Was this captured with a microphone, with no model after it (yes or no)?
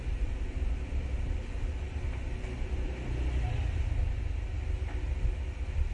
yes